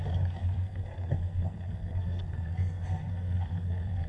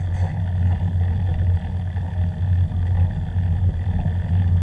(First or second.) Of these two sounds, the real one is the second